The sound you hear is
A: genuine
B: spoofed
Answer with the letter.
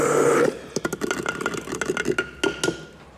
A